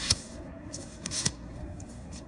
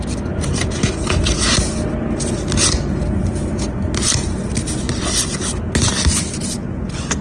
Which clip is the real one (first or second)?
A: second